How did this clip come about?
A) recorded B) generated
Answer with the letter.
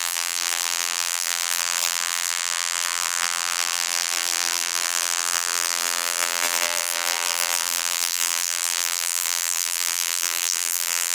B